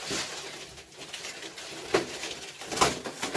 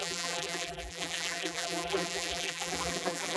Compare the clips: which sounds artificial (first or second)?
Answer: second